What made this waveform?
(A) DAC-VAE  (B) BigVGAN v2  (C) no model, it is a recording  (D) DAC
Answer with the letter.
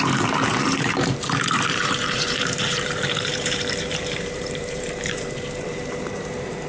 B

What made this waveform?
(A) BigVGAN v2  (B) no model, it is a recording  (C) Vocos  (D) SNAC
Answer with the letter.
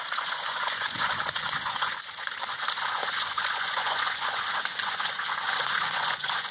C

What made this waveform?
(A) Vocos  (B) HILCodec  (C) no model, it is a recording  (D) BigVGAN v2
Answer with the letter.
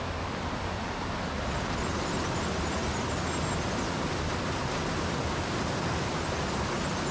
C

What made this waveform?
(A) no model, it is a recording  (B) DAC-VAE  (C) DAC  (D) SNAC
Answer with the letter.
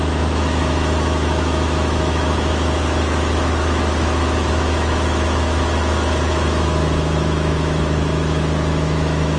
B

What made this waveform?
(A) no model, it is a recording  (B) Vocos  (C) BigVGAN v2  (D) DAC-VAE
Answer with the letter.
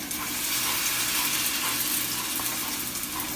A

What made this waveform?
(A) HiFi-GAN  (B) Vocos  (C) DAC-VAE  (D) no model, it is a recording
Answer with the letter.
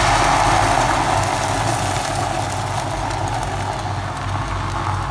D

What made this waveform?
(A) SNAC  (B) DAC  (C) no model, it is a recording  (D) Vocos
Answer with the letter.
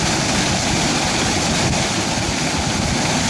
C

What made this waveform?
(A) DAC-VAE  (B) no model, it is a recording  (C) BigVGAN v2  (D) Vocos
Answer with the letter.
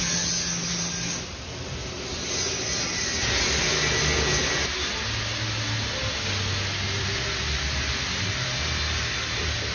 B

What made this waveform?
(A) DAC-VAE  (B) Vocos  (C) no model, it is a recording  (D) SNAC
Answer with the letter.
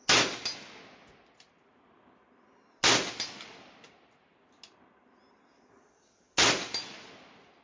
C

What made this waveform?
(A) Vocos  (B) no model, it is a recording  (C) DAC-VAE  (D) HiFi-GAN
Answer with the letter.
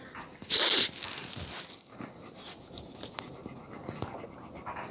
B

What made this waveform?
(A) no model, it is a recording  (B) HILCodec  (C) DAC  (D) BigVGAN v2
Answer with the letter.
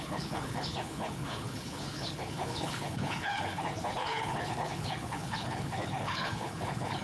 B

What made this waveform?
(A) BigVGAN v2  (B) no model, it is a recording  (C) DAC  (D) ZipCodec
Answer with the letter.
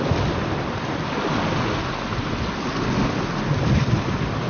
B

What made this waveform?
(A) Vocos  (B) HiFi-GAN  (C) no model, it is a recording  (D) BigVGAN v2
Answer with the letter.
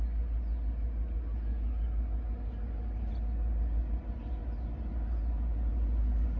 C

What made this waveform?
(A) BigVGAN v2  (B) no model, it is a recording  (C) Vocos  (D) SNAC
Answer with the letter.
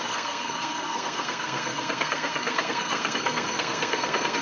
D